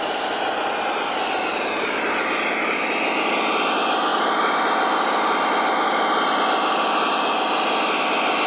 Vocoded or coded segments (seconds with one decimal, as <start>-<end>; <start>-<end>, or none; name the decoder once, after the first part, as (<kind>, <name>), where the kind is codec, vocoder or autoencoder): none